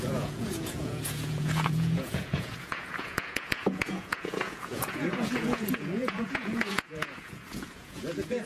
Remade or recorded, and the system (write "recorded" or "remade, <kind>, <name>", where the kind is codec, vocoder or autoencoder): remade, vocoder, Vocos